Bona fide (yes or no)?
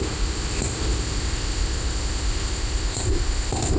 no